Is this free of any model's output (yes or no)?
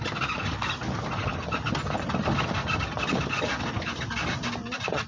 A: yes